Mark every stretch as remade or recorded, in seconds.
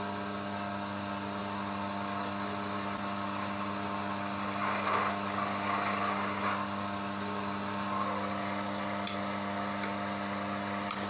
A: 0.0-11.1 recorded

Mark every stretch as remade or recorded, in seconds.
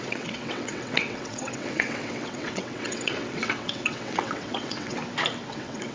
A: 0.0-5.0 remade; 5.0-5.5 recorded; 5.5-5.9 remade